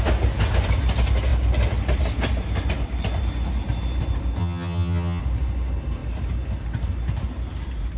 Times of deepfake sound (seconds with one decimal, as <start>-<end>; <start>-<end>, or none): 4.4-5.2